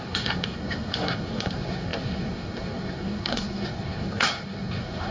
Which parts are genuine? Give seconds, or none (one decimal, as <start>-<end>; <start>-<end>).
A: none